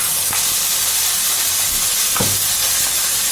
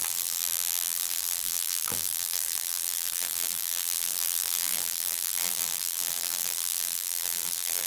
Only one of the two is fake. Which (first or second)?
second